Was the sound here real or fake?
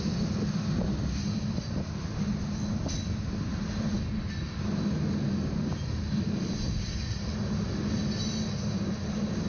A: real